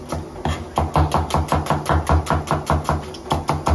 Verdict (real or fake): real